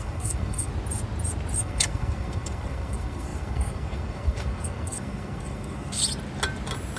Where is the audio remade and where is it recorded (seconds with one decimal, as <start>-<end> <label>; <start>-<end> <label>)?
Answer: 0.0-0.7 remade; 0.7-1.6 recorded; 1.6-6.0 remade; 6.0-7.0 recorded